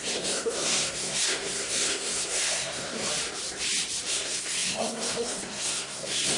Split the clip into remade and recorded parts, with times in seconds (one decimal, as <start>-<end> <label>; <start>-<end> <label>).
0.0-3.1 remade; 3.1-4.1 recorded; 4.1-6.4 remade